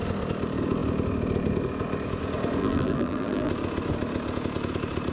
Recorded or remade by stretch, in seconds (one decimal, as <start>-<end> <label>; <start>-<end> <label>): 0.0-2.6 recorded; 2.6-3.5 remade; 3.5-5.1 recorded